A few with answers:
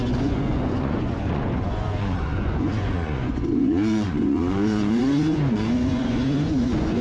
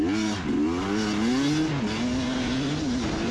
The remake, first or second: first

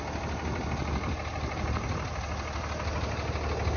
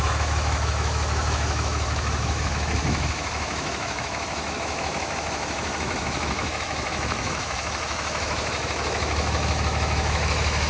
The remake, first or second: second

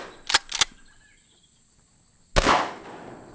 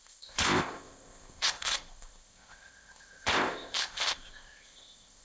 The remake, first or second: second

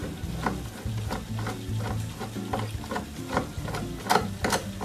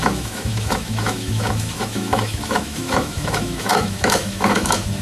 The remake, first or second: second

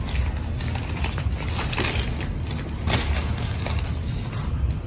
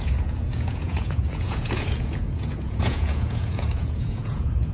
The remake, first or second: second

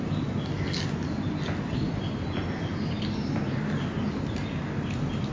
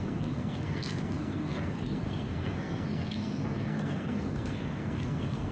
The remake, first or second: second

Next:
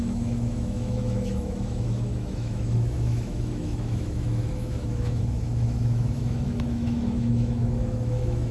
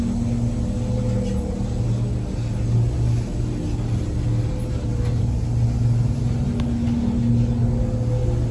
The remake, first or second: first